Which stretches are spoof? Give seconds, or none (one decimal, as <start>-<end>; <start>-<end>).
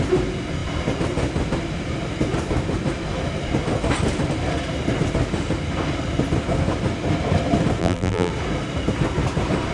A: 7.8-8.3